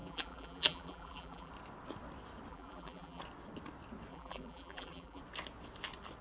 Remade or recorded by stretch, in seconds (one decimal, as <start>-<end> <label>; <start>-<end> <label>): 0.0-1.5 remade; 1.5-2.5 recorded; 2.5-3.2 remade; 3.2-4.1 recorded; 4.1-5.2 remade; 5.2-6.2 recorded